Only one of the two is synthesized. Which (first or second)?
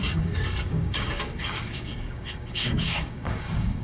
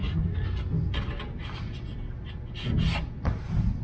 first